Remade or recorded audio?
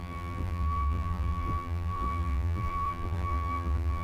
remade